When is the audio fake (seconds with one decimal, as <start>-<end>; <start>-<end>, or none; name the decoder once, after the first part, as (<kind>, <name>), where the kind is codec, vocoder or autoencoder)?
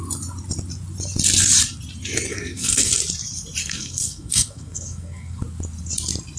2.3-2.9 (codec, SNAC); 3.6-5.4